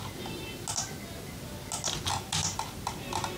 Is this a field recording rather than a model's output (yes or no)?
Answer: yes